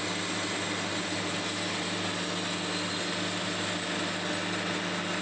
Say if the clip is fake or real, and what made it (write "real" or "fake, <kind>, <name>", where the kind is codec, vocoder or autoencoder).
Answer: real